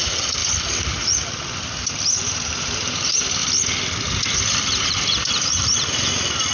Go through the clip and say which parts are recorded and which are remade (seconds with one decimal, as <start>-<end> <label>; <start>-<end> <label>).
0.0-0.4 remade; 0.4-1.9 recorded; 1.9-3.4 remade; 3.4-4.8 recorded; 4.8-6.5 remade